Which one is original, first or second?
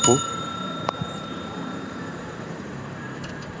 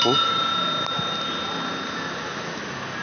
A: second